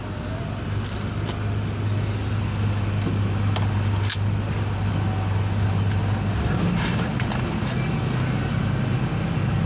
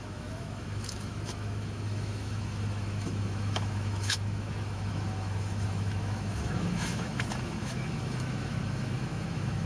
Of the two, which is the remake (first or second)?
second